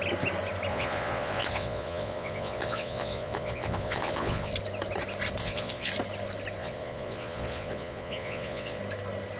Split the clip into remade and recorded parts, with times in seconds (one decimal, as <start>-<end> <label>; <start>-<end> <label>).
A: 0.0-0.7 recorded; 0.7-4.5 remade; 4.5-5.4 recorded; 5.4-5.9 remade; 5.9-6.6 recorded; 6.6-8.8 remade; 8.8-9.4 recorded